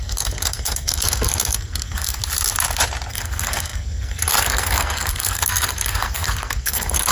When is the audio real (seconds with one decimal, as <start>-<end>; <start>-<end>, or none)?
2.2-3.1